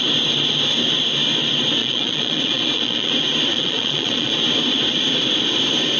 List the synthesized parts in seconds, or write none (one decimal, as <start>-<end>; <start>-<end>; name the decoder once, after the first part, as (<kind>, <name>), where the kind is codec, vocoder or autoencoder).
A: 1.8-3.1 (vocoder, Vocos); 3.5-4.3